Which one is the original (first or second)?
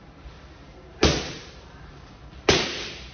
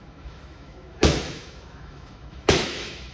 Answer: first